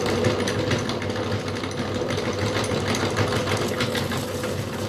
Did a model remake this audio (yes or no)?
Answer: no